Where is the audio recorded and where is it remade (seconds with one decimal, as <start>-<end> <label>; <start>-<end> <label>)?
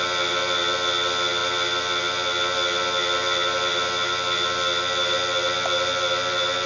0.0-6.7 recorded